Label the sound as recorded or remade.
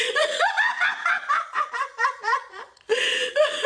remade